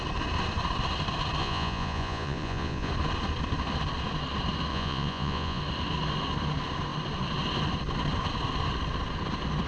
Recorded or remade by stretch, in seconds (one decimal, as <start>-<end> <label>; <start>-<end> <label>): 0.0-1.4 recorded; 1.4-2.9 remade; 2.9-4.7 recorded; 4.7-5.6 remade; 5.6-9.7 recorded